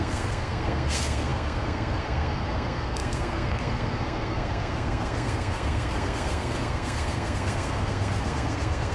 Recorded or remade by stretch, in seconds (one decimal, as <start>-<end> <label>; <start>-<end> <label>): 0.0-8.9 remade